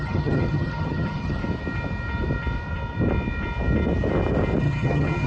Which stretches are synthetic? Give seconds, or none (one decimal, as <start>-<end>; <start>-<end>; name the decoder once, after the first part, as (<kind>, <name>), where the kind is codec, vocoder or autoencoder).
0.0-1.4 (vocoder, HiFi-GAN); 4.6-5.3